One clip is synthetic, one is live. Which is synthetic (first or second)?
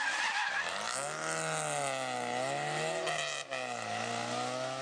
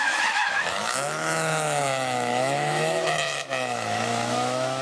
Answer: second